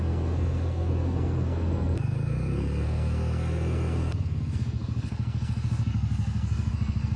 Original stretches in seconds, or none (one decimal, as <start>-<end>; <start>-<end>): none